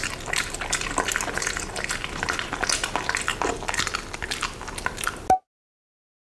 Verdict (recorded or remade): recorded